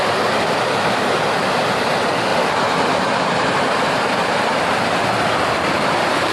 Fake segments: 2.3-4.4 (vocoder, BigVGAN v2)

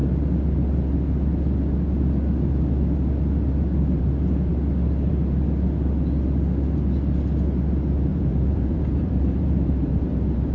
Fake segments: 8.1-10.5 (vocoder, BigVGAN v2)

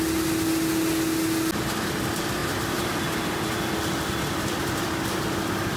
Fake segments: 2.4-3.3 (vocoder, BigVGAN v2)

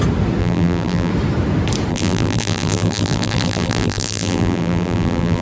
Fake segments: 0.4-1.1 (vocoder, BigVGAN v2); 1.9-5.4

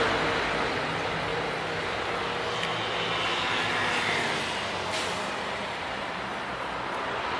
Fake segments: 0.0-1.3 (vocoder, BigVGAN v2); 5.7-7.4